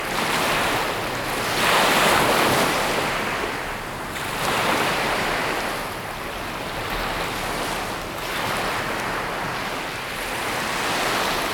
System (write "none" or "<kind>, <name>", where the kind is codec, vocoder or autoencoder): none